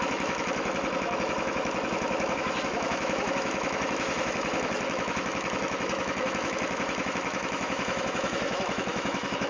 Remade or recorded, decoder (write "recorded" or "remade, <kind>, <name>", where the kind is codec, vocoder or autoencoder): remade, autoencoder, DAC-VAE